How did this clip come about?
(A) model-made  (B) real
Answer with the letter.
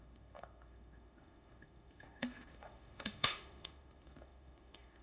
A